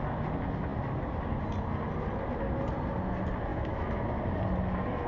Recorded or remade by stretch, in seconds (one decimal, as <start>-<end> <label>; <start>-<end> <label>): 0.0-3.5 recorded; 3.5-4.1 remade; 4.1-5.1 recorded